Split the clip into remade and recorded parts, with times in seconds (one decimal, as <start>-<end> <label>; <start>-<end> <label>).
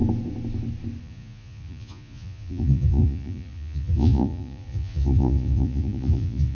0.0-1.0 recorded; 1.0-6.5 remade